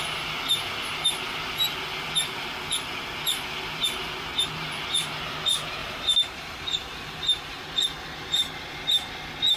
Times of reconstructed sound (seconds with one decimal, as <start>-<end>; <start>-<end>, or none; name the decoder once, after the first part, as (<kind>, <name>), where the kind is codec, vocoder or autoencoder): 5.8-7.6 (vocoder, BigVGAN v2)